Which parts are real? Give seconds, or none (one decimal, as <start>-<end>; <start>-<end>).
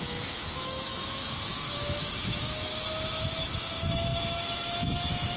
2.7-3.4